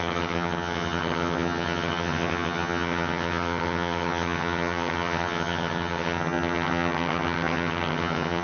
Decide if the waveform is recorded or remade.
remade